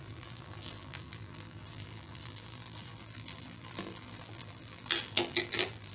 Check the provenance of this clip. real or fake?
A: fake